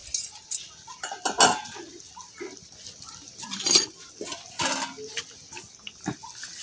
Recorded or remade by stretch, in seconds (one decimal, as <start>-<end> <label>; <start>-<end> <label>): 0.0-6.6 recorded